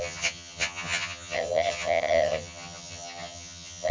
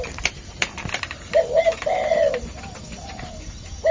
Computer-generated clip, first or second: first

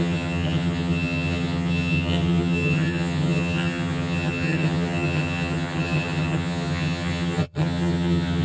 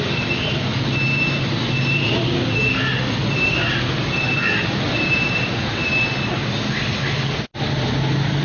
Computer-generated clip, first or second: first